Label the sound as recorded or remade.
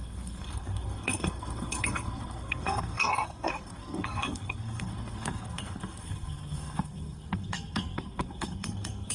remade